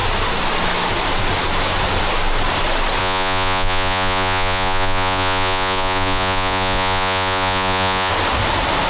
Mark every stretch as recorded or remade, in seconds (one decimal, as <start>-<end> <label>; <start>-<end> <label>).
0.0-3.0 recorded; 3.0-8.1 remade; 8.1-8.9 recorded